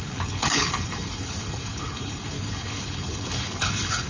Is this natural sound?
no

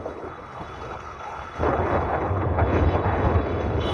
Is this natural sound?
no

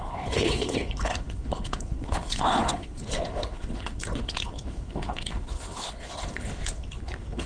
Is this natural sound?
no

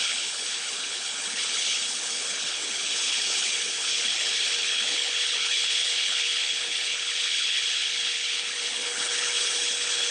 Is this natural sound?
no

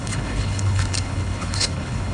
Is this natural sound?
no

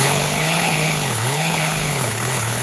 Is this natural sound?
no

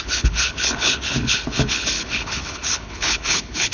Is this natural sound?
no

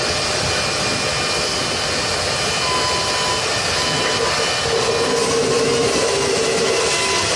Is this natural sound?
yes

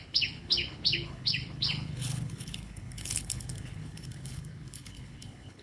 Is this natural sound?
no